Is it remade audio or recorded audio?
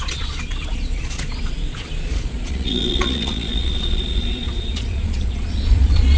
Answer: remade